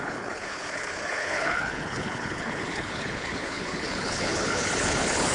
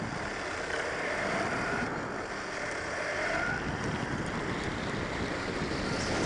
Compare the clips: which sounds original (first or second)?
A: second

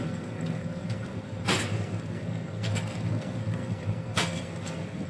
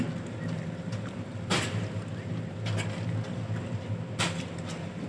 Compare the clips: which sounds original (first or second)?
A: second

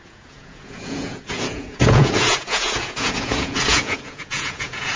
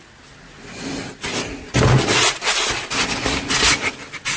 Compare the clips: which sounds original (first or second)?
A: second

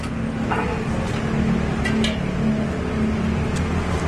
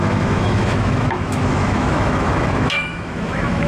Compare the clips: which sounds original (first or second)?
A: first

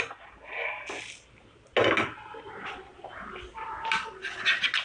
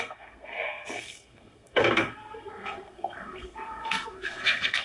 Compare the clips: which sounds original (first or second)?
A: first